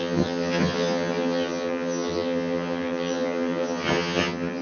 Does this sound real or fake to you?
fake